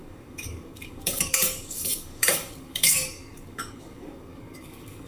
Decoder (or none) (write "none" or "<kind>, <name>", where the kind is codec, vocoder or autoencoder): codec, DAC